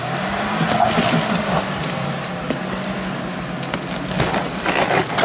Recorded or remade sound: recorded